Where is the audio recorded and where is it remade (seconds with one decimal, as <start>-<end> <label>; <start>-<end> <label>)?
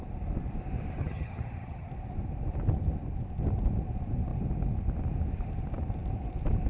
0.0-1.0 recorded; 1.0-1.9 remade; 1.9-6.7 recorded